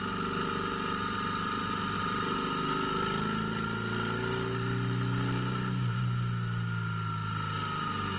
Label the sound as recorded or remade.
recorded